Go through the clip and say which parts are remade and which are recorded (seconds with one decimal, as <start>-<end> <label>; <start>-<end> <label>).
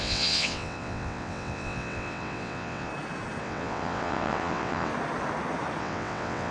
0.0-2.9 remade; 2.9-3.4 recorded; 3.4-4.9 remade; 4.9-5.8 recorded; 5.8-6.5 remade